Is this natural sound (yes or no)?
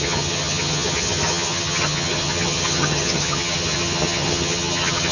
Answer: no